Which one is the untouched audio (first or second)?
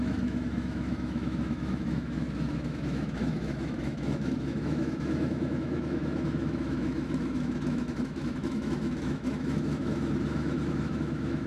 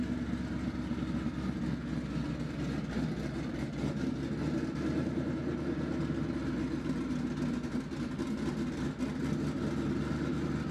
second